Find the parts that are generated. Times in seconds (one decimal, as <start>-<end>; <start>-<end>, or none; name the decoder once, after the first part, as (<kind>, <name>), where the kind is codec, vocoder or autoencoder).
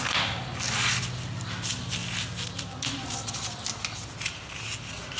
none